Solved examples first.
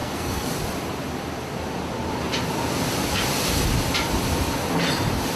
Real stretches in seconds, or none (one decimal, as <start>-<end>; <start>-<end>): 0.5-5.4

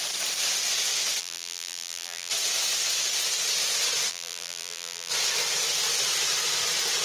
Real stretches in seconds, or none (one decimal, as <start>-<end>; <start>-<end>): 0.0-1.2; 2.3-4.1; 5.1-7.0

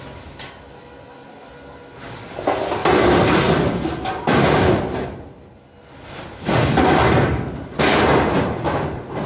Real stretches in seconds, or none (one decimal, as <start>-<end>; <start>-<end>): 0.0-9.3

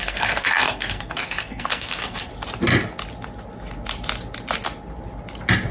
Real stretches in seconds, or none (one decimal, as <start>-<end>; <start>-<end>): 2.3-5.7

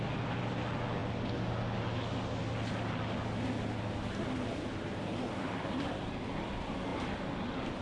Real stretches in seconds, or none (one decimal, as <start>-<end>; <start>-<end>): 0.0-7.8

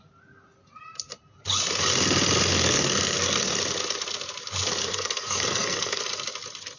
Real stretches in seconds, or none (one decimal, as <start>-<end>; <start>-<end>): 0.0-2.5; 3.6-4.8; 6.0-6.8

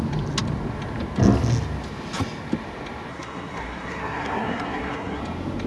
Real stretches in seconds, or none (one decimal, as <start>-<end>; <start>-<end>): 0.0-3.1; 5.2-5.7